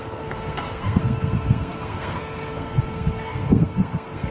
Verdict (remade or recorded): remade